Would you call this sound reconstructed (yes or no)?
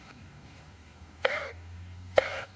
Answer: yes